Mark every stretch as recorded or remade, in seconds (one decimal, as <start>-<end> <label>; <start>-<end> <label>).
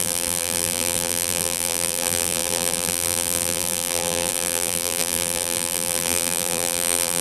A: 0.0-7.2 remade